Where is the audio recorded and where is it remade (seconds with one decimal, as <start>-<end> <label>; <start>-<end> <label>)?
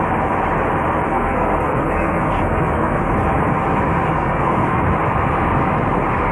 0.0-1.1 recorded; 1.1-3.0 remade; 3.0-4.1 recorded; 4.1-4.8 remade; 4.8-6.3 recorded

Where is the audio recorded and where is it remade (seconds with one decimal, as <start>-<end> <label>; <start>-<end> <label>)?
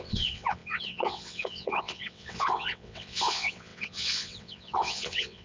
0.0-5.4 remade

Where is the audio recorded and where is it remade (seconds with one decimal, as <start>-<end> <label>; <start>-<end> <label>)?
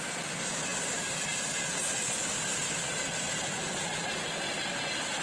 0.0-5.2 recorded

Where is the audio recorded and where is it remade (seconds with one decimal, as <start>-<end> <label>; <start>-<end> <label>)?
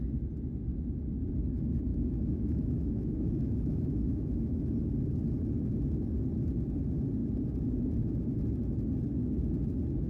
0.0-1.9 recorded; 1.9-4.6 remade; 4.6-10.1 recorded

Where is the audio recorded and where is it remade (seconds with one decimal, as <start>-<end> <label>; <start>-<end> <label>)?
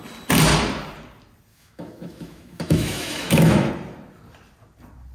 0.0-1.5 recorded; 1.5-3.7 remade; 3.7-5.1 recorded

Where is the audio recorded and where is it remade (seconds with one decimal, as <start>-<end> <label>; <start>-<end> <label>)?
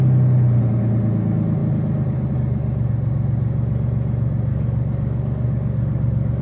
0.0-4.5 recorded; 4.5-6.4 remade